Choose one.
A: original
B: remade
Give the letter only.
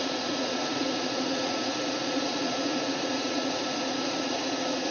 B